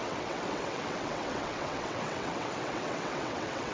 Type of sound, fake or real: fake